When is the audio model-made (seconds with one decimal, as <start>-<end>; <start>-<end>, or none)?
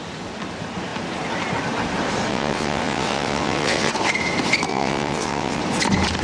2.3-3.9; 4.7-5.6